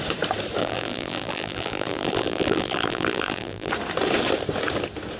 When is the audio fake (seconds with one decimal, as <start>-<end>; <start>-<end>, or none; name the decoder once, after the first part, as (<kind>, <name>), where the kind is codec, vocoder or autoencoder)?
0.6-3.7 (vocoder, BigVGAN v2)